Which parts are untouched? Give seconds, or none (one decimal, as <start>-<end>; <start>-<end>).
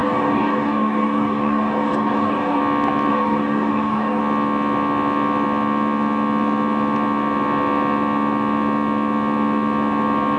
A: 2.6-3.1; 4.2-10.4